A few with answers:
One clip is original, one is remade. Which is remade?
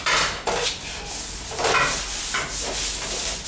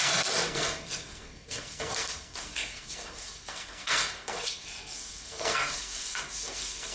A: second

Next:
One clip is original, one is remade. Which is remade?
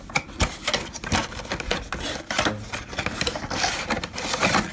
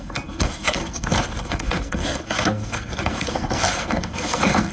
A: second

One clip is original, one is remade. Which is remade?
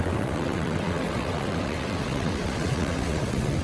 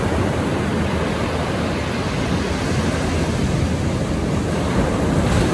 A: first